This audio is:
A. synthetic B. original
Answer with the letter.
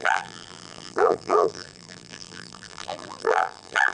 A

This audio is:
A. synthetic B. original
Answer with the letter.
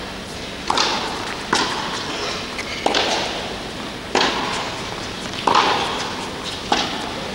B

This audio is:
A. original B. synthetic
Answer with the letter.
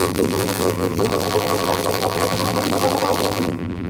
B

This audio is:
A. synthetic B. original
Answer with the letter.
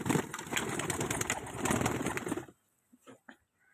B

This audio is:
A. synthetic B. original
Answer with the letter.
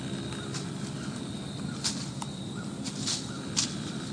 B